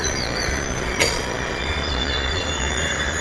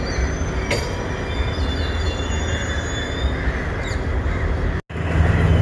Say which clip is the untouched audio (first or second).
second